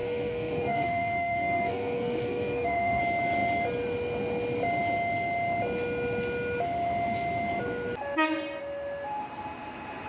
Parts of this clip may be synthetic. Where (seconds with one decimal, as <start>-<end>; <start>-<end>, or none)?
0.0-3.0